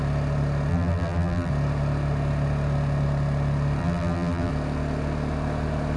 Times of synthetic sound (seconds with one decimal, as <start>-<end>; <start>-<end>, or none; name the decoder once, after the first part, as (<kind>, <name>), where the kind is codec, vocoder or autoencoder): 0.7-1.5 (vocoder, BigVGAN v2); 3.8-4.5